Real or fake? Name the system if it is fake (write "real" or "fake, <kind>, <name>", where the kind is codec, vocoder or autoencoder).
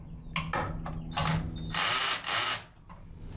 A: real